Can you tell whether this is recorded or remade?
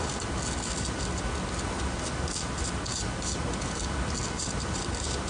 recorded